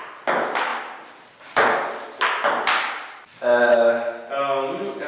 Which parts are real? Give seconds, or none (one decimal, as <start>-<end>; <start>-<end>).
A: 0.0-5.1